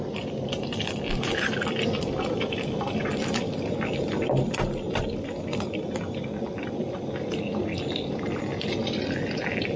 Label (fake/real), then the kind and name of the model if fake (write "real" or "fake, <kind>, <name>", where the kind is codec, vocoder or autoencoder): real